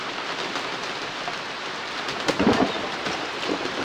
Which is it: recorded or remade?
recorded